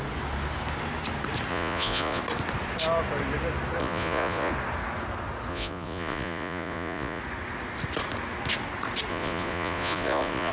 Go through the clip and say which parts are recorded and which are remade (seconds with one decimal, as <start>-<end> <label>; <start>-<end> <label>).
0.0-1.5 recorded; 1.5-2.2 remade; 2.2-3.8 recorded; 3.8-4.5 remade; 4.5-5.5 recorded; 5.5-7.2 remade; 7.2-9.1 recorded; 9.1-10.5 remade